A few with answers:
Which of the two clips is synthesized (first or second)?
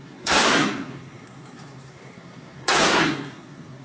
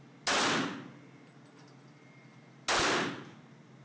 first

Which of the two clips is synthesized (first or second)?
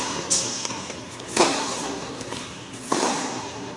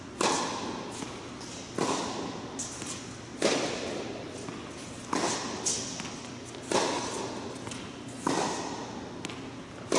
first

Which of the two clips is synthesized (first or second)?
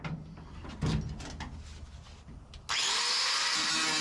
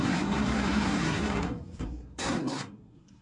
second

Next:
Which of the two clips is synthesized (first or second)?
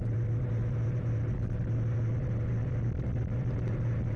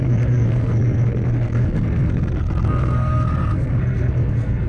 second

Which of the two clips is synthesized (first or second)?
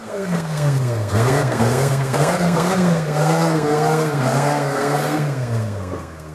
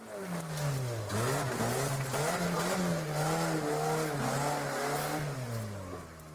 first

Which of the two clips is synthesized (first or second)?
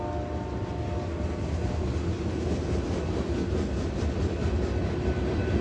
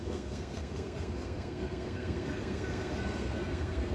second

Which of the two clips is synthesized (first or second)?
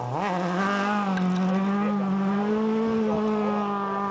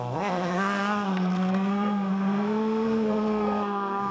second